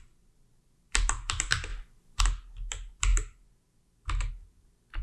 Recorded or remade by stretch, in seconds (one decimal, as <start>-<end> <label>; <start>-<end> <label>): 0.0-5.0 recorded